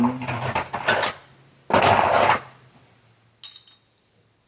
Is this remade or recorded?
recorded